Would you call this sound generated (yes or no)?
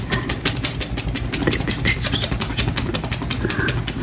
no